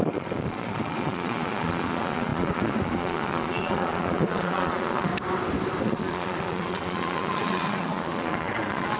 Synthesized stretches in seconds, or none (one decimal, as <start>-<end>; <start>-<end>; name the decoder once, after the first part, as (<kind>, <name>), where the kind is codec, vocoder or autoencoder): 0.0-5.1 (vocoder, Vocos); 5.8-9.0